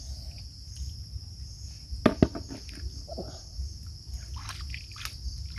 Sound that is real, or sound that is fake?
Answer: real